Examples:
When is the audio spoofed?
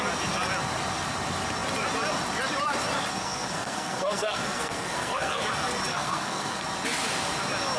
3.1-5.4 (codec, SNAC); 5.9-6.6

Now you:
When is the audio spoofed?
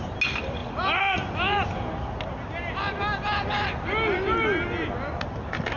none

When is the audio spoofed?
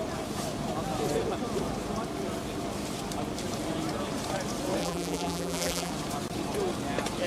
4.8-5.9 (vocoder, BigVGAN v2)